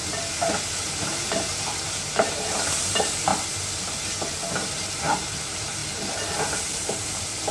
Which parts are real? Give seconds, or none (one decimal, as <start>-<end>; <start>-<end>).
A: 0.0-0.6; 3.3-4.5; 5.8-6.6